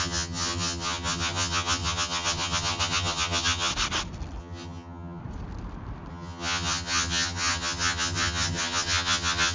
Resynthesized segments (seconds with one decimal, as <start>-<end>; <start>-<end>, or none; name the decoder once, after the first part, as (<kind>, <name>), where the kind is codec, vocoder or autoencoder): 0.0-3.7 (vocoder, HiFi-GAN); 4.4-5.2; 6.1-9.5